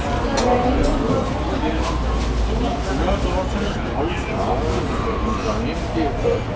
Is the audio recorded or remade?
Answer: recorded